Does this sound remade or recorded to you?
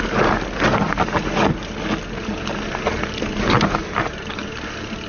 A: recorded